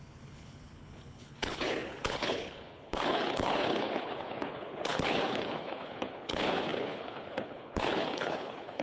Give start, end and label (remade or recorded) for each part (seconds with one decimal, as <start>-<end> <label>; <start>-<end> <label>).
0.0-8.8 remade

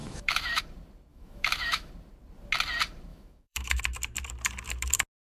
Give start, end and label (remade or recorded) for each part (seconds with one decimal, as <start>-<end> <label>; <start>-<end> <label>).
0.0-0.6 remade; 0.6-1.1 recorded; 1.1-1.9 remade; 1.9-3.1 recorded; 3.1-3.8 remade; 3.8-5.3 recorded

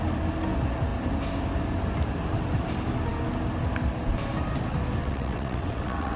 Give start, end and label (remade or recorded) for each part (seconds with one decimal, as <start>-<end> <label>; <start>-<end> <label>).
0.0-5.0 recorded; 5.0-6.2 remade

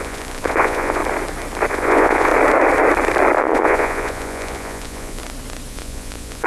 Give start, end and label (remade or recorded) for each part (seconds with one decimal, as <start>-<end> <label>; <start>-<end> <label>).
0.0-1.0 remade; 1.0-1.7 recorded; 1.7-2.3 remade; 2.3-3.4 recorded; 3.4-5.2 remade; 5.2-5.7 recorded; 5.7-6.5 remade

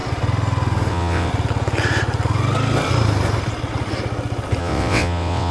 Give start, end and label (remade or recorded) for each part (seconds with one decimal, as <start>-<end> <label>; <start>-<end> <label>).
0.0-0.9 recorded; 0.9-1.3 remade; 1.3-4.6 recorded; 4.6-5.5 remade

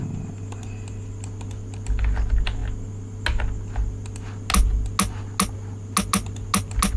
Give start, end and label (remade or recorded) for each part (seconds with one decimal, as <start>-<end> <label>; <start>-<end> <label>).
0.0-7.0 recorded

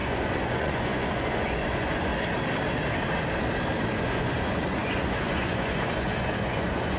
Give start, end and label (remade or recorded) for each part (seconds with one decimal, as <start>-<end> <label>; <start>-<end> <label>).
0.0-2.1 remade; 2.1-4.0 recorded; 4.0-7.0 remade